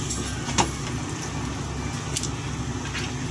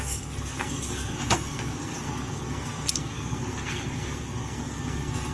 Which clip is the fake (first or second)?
second